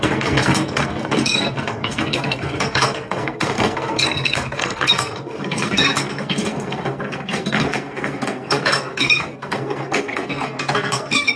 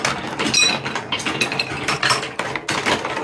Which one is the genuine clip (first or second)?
second